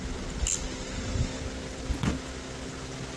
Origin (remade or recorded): recorded